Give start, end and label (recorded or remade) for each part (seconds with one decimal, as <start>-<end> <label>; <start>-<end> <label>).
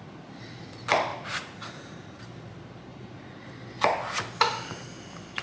0.0-1.1 recorded; 1.1-2.2 remade; 2.2-2.9 recorded; 2.9-3.5 remade; 3.5-5.4 recorded